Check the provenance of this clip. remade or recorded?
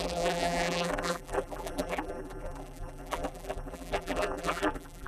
remade